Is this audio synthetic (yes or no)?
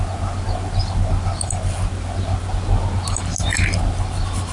no